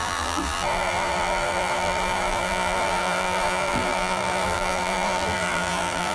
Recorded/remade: remade